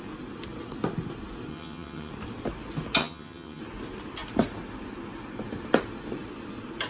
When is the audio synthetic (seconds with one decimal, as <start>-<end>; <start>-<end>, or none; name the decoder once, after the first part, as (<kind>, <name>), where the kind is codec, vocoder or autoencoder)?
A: 1.5-2.1 (vocoder, HiFi-GAN); 3.0-3.6

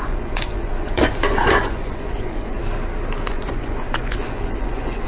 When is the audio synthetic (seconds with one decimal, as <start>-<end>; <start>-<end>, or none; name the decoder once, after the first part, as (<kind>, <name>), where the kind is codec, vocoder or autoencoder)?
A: 0.0-2.6 (vocoder, Vocos); 3.3-5.1

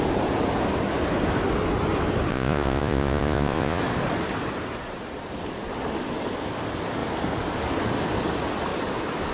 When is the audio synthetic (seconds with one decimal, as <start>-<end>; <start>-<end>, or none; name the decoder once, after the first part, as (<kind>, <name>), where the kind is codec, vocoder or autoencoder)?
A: 2.3-3.8 (vocoder, Vocos)

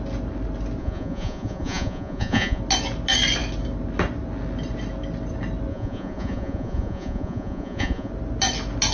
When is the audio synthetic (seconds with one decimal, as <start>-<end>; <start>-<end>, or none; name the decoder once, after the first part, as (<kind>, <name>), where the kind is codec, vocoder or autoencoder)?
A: 0.8-2.6 (vocoder, Vocos); 5.7-8.1

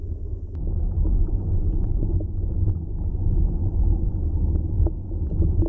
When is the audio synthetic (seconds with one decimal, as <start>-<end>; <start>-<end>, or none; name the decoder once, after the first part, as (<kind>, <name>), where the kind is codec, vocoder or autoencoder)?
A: 1.1-4.1 (vocoder, Vocos)